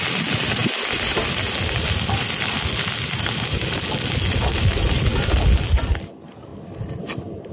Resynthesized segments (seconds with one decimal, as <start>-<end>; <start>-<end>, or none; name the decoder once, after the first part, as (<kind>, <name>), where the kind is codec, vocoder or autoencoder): none